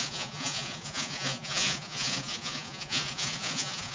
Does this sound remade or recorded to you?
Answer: remade